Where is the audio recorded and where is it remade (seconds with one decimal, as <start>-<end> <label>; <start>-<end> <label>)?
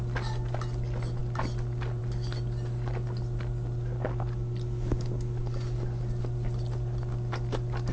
0.0-7.9 recorded